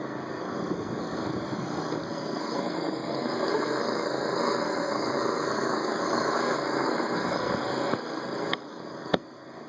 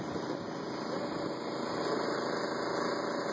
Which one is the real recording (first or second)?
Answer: second